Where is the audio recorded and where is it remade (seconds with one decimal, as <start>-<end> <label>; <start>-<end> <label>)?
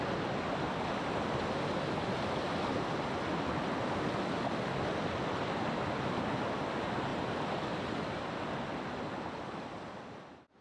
0.0-7.1 recorded; 7.1-8.5 remade; 8.5-10.6 recorded